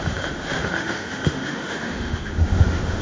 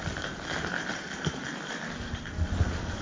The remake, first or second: first